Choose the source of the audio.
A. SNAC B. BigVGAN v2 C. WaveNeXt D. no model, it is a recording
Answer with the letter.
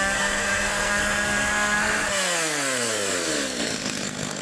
A